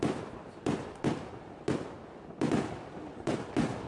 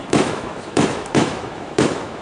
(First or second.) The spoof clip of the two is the second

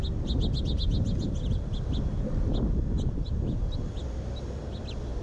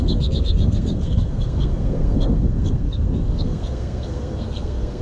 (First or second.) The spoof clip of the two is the second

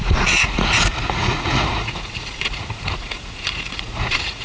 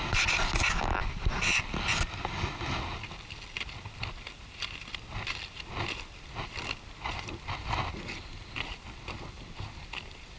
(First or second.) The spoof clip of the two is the first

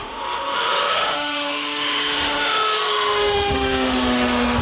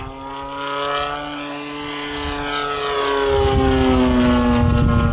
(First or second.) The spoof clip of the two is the first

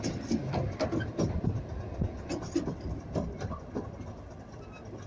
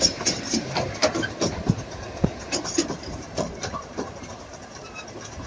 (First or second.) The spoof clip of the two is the second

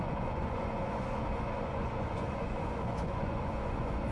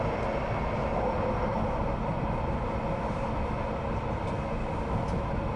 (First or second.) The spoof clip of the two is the first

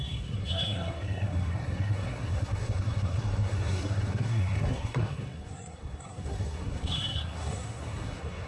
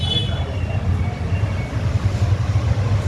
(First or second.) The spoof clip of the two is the first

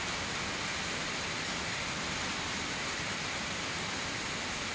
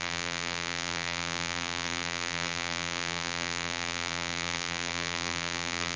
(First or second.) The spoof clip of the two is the second